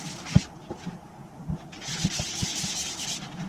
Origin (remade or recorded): recorded